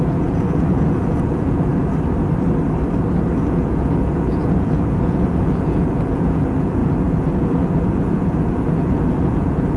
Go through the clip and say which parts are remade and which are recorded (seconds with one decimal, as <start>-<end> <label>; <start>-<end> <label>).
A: 0.0-1.7 remade; 1.7-3.4 recorded; 3.4-9.8 remade